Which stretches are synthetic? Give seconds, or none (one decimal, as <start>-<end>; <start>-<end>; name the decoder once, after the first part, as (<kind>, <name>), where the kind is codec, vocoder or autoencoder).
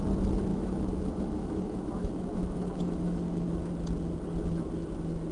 0.5-3.7 (autoencoder, DAC-VAE)